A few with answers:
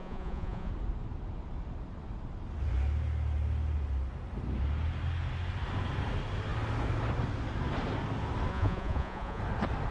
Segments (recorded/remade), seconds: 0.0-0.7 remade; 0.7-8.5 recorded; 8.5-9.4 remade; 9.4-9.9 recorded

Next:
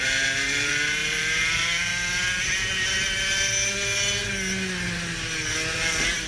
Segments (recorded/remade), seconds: 0.0-1.9 remade; 1.9-5.7 recorded; 5.7-6.3 remade

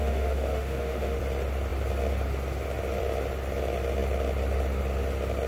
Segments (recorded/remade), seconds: 0.0-1.2 remade; 1.2-5.5 recorded

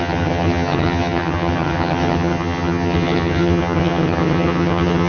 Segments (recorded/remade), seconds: 0.0-5.1 remade

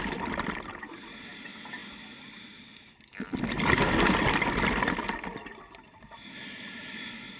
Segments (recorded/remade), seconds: 0.0-7.4 recorded

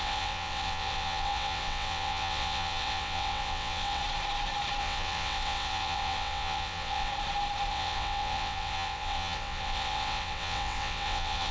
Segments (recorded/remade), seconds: 0.0-4.0 remade; 4.0-4.8 recorded; 4.8-7.1 remade; 7.1-7.7 recorded; 7.7-11.5 remade

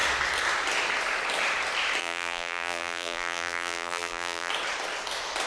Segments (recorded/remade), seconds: 0.0-2.0 recorded; 2.0-4.5 remade; 4.5-5.5 recorded

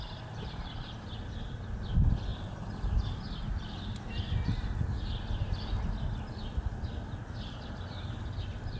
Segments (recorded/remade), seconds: 0.0-8.8 recorded